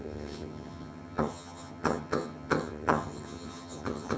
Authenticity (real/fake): fake